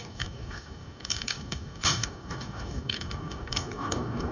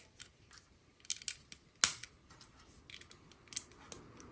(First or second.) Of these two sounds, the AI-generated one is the first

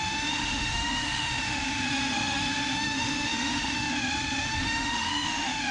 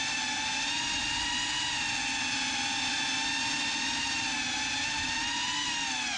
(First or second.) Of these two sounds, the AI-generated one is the first